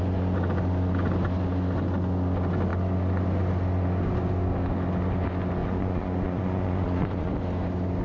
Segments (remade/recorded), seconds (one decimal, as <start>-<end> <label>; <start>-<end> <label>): 0.0-5.6 recorded; 5.6-7.3 remade; 7.3-8.0 recorded